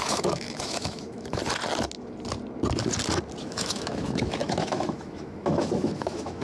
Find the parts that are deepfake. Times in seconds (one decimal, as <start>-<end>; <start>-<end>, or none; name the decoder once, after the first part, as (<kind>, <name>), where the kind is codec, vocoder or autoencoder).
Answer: 0.0-1.4 (autoencoder, DAC-VAE); 3.4-6.4